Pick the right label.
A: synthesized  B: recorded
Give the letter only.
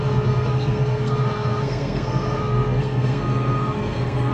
A